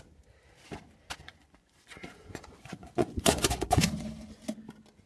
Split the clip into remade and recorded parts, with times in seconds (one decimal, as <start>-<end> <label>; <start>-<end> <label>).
0.0-1.2 recorded; 1.2-4.3 remade; 4.3-5.1 recorded